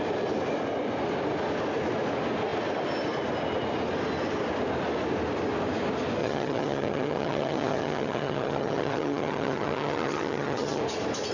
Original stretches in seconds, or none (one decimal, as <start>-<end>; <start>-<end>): 0.0-6.2; 10.8-11.3